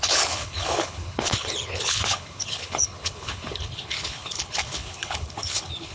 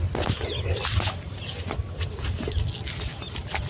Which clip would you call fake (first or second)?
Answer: first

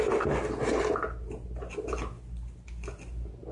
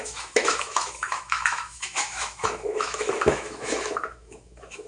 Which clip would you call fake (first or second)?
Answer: second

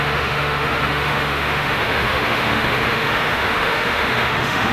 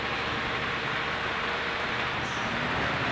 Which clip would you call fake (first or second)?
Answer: first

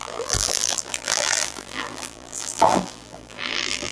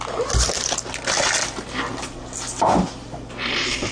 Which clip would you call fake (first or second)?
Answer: first